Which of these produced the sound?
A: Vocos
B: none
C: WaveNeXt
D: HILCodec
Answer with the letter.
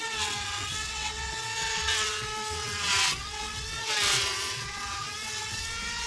C